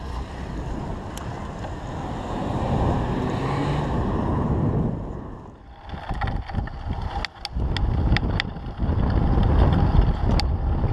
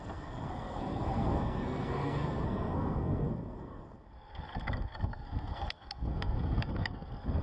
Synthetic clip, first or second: second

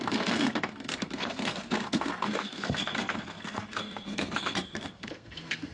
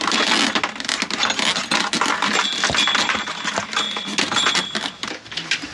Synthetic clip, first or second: first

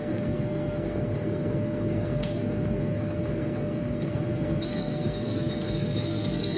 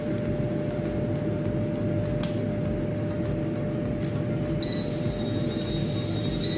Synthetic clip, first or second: first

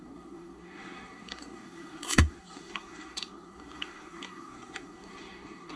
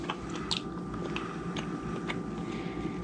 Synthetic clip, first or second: first